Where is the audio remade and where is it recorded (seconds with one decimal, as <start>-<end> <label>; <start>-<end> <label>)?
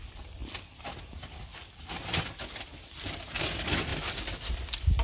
0.0-5.0 recorded